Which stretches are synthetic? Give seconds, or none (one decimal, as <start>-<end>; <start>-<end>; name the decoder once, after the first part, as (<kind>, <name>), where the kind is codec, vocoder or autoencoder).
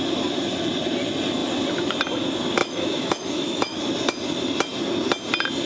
2.6-3.8 (autoencoder, DAC-VAE)